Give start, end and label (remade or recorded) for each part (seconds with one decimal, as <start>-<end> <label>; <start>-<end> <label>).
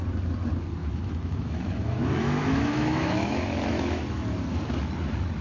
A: 0.0-0.8 recorded; 0.8-4.0 remade; 4.0-5.4 recorded